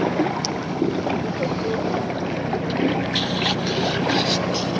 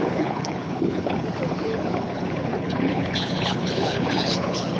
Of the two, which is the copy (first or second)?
second